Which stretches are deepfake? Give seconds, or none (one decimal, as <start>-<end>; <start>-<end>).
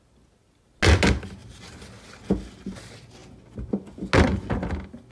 none